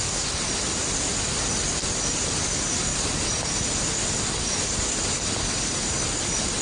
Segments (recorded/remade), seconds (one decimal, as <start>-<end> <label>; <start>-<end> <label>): 0.0-6.6 recorded